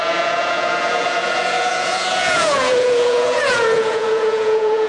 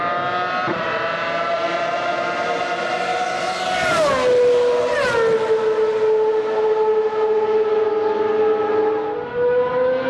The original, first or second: second